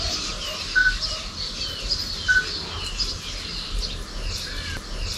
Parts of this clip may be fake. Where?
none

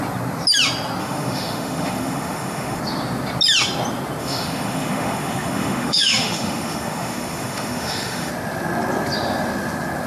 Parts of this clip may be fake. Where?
1.0-2.8 (autoencoder, DAC-VAE); 4.2-8.3

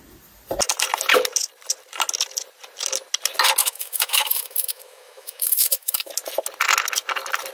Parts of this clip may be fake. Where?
3.6-6.1 (autoencoder, DAC-VAE)